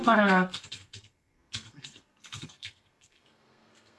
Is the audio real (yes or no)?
no